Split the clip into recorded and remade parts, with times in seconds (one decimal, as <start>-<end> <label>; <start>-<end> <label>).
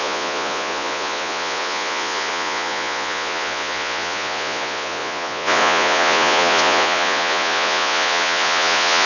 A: 0.0-9.1 remade